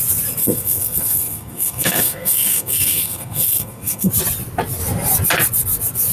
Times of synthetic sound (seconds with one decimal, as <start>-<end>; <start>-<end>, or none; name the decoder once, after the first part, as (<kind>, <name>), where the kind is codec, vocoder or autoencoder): 0.4-4.1 (codec, SNAC)